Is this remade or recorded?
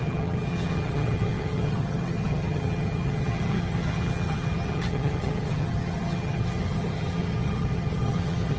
remade